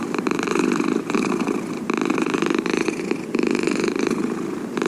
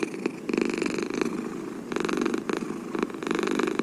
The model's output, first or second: first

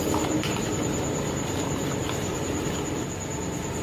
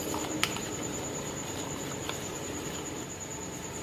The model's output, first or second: second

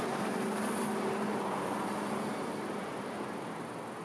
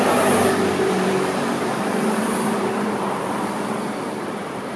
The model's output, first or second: second